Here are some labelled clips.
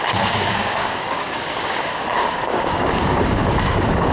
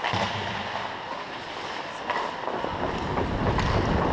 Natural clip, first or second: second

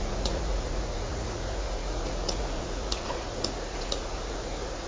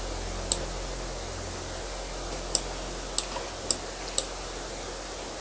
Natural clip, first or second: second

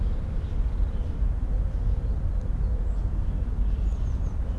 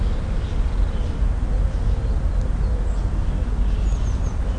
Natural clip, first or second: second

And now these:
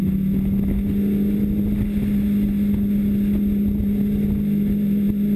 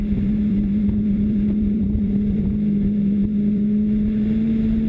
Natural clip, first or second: first